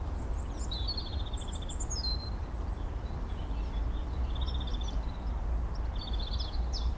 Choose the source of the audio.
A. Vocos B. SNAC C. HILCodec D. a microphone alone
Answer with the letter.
D